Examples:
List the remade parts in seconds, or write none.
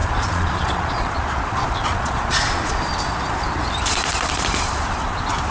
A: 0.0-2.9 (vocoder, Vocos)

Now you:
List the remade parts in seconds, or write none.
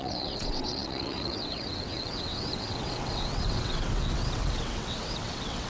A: 0.0-5.7 (vocoder, WaveNeXt)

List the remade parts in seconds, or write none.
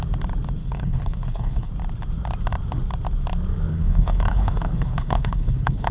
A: 0.6-1.7 (codec, HILCodec); 3.7-5.9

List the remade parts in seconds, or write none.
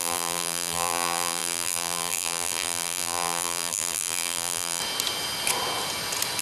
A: 0.0-4.8 (vocoder, BigVGAN v2)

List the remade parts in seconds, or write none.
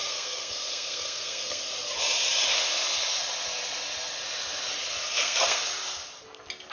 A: 0.0-1.6 (codec, SNAC); 5.1-5.6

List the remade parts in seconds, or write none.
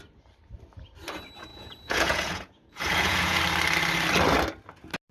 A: 1.5-3.4 (vocoder, Vocos)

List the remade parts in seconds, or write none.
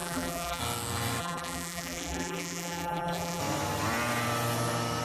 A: 0.0-0.6 (vocoder, BigVGAN v2); 1.2-3.4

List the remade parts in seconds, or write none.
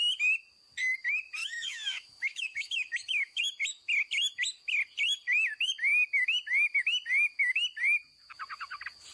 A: 1.4-3.4 (autoencoder, DAC-VAE)